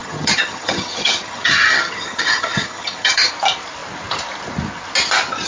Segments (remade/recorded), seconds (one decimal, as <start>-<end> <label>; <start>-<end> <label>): 0.0-3.3 remade; 3.3-5.5 recorded